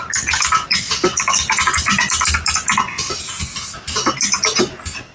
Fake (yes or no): no